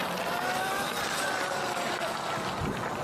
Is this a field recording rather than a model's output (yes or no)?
yes